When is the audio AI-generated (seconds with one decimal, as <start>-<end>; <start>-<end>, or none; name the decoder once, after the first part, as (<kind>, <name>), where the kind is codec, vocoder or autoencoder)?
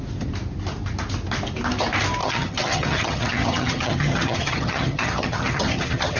2.2-6.2 (vocoder, HiFi-GAN)